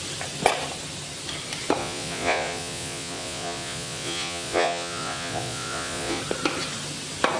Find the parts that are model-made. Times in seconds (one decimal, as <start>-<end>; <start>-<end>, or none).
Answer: 1.8-6.2